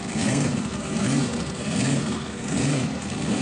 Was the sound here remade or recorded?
remade